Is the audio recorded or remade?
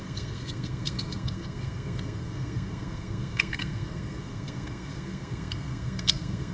remade